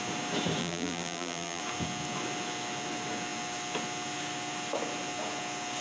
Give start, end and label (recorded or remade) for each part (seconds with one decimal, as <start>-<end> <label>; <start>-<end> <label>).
0.0-0.6 recorded; 0.6-1.6 remade; 1.6-5.8 recorded